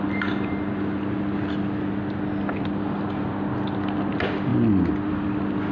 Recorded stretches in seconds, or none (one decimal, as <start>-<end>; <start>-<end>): 0.0-5.7